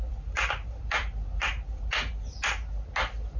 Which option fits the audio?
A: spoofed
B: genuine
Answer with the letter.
B